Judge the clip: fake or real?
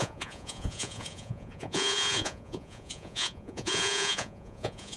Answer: fake